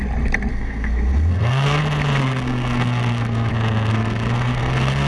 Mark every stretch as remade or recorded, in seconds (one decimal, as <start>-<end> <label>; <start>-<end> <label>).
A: 0.0-0.5 recorded; 0.5-1.8 remade; 1.8-2.2 recorded; 2.2-3.5 remade; 3.5-3.9 recorded; 3.9-5.1 remade